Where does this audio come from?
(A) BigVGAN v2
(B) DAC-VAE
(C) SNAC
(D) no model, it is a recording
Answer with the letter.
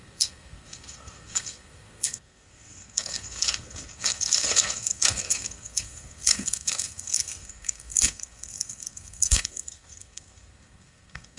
C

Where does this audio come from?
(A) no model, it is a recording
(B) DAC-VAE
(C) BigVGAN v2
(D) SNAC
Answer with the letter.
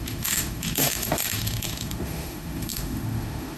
B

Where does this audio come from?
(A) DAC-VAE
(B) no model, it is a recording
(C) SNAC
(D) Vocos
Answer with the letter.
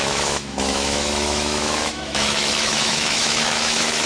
A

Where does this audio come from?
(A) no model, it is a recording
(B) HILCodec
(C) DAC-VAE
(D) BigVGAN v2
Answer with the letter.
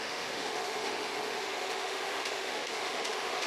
C